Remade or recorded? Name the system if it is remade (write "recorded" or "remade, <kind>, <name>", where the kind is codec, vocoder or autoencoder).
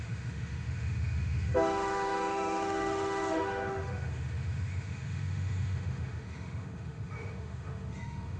remade, autoencoder, DAC-VAE